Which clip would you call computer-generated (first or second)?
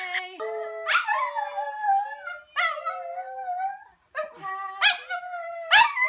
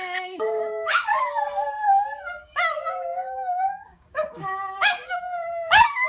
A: second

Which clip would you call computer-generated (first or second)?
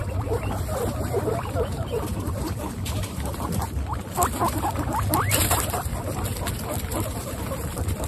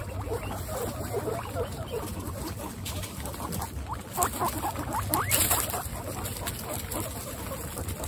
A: first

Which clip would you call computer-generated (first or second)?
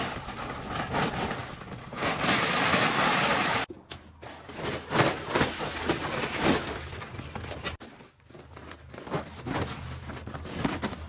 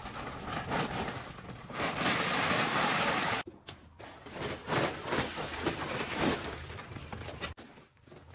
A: second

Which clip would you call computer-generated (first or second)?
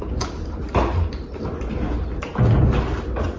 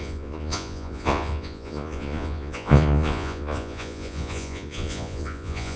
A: second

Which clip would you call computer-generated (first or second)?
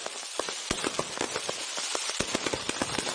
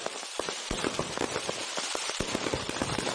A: second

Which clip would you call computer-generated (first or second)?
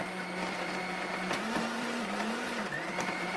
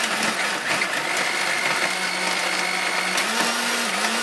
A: first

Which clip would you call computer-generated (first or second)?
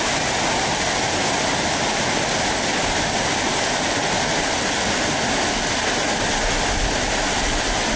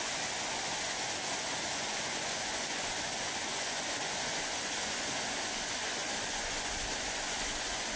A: second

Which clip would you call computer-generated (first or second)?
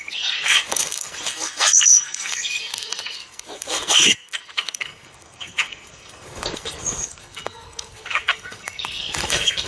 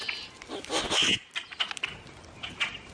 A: first